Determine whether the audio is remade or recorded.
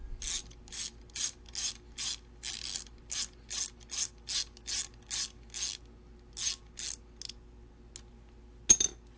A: recorded